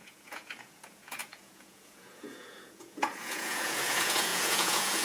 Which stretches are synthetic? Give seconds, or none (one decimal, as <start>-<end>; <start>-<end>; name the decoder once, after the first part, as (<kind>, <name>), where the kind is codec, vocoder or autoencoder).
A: 0.0-5.0 (vocoder, Vocos)